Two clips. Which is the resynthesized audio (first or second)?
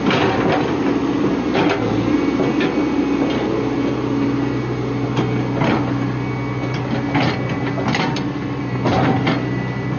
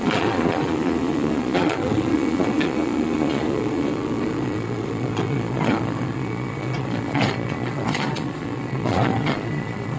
second